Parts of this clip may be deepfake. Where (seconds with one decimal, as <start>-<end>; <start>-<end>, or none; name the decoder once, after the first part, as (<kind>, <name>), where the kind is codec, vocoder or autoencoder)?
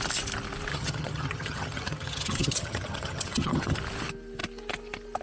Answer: 0.7-3.8 (vocoder, HiFi-GAN)